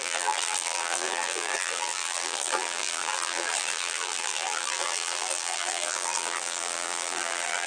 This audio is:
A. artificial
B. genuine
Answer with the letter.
A